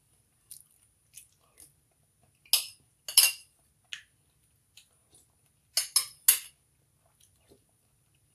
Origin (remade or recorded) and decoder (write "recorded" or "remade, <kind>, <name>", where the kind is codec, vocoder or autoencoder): recorded